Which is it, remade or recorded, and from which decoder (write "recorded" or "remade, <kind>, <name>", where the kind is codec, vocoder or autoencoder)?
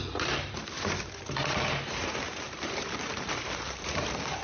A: remade, vocoder, BigVGAN v2